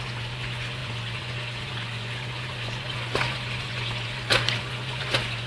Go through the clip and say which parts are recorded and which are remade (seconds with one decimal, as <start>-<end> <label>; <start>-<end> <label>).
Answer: 0.0-5.5 remade